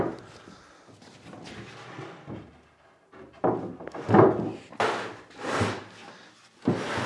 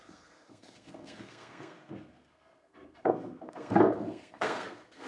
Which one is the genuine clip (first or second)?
first